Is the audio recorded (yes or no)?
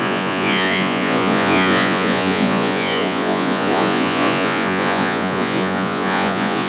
no